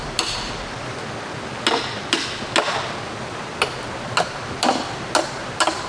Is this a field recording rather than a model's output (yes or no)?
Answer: yes